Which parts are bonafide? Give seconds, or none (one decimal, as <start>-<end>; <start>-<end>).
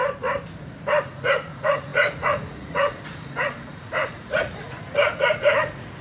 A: 0.0-0.6